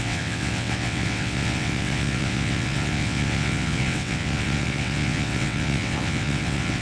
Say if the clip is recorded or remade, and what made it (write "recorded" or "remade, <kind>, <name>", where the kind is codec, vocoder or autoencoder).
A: remade, vocoder, WaveNeXt